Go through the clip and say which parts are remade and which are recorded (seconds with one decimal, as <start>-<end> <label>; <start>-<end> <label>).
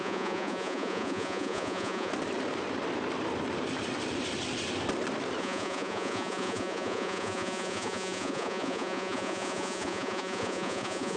0.0-2.1 remade; 2.1-5.4 recorded; 5.4-11.2 remade